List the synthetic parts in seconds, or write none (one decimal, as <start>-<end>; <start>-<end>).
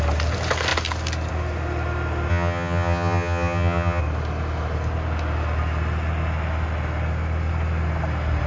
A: 2.3-4.0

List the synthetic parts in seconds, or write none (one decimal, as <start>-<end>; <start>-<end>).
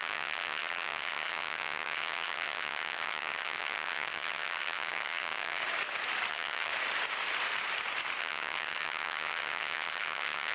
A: 0.0-5.6; 6.3-6.7; 8.2-10.5